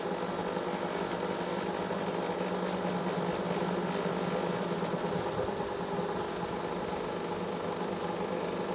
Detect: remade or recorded recorded